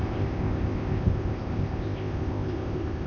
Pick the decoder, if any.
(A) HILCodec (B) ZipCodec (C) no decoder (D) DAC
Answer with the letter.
B